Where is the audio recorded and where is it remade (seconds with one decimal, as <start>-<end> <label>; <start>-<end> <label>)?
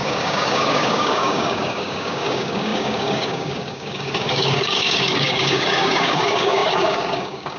0.0-7.6 remade